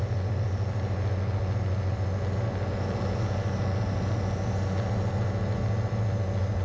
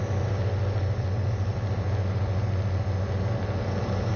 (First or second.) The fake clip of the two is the second